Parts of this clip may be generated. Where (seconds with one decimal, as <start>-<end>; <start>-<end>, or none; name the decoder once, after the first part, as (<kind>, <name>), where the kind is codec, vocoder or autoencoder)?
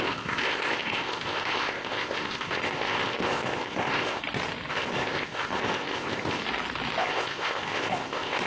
0.0-4.2 (codec, ZipCodec); 4.7-6.4; 7.0-8.5